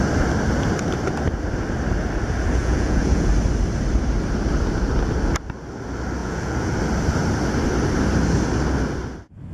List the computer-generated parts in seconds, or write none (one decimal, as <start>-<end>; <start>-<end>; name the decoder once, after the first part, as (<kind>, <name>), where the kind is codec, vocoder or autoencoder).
2.6-3.3 (vocoder, Vocos); 6.2-6.8